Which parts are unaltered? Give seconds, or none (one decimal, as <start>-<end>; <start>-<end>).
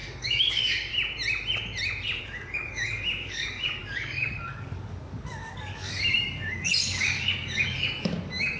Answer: 0.9-2.2